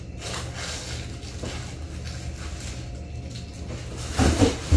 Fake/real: real